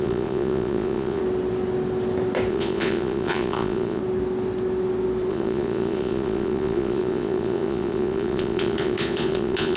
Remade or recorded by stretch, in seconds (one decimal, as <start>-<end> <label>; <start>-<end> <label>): 0.0-1.2 remade; 1.2-2.5 recorded; 2.5-4.0 remade; 4.0-5.3 recorded; 5.3-9.8 remade